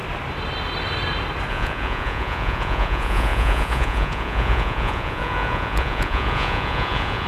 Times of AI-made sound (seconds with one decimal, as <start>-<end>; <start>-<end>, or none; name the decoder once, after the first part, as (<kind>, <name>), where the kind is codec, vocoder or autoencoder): 1.5-7.3 (vocoder, Vocos)

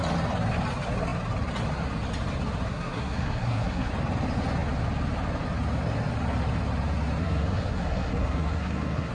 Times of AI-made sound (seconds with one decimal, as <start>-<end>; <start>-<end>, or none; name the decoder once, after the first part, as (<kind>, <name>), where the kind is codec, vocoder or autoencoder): 2.7-3.9 (codec, SNAC); 7.2-9.1

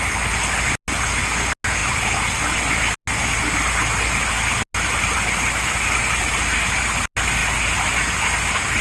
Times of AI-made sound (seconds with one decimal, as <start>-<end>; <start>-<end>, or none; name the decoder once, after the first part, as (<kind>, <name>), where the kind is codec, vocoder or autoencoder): none